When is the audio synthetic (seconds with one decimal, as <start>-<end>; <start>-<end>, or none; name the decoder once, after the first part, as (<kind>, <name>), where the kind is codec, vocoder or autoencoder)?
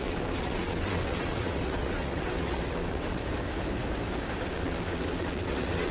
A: 0.0-3.2 (vocoder, WaveNeXt); 4.5-5.9